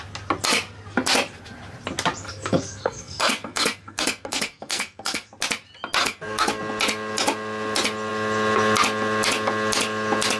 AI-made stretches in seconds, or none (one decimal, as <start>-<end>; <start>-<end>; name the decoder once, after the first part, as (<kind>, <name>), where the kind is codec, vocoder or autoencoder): 2.3-5.3 (codec, SNAC); 6.0-6.6

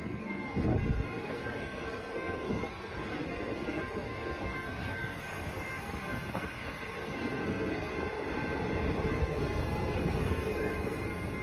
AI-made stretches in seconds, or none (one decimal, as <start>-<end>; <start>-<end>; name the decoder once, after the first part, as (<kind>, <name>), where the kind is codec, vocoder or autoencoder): 0.0-7.9 (codec, SNAC); 9.1-11.4